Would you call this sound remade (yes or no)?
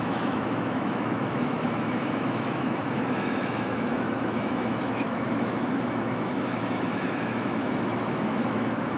yes